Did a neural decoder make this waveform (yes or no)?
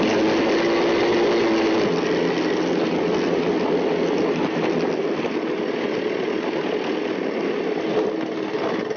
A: no